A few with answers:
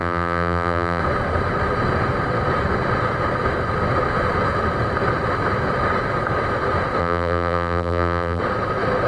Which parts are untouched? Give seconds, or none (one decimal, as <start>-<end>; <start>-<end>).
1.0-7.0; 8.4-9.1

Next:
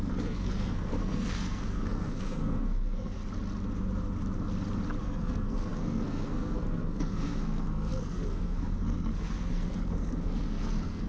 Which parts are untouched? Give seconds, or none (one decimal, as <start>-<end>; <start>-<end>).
3.2-5.0

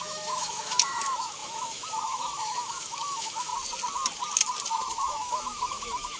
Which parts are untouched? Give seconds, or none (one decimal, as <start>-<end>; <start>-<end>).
3.5-4.7

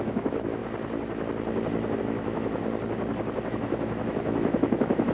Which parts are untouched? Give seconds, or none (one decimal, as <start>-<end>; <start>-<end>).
0.6-2.0; 2.6-3.5

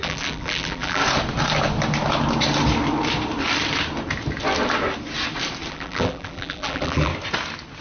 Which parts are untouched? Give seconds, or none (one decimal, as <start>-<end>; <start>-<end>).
1.0-5.7; 7.1-7.8